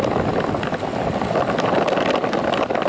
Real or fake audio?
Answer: real